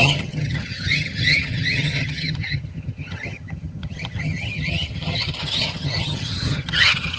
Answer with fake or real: fake